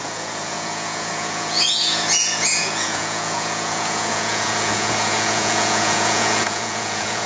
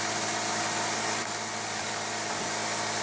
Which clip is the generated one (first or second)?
first